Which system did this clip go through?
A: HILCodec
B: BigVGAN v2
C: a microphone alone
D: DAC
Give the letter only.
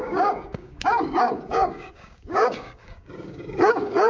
D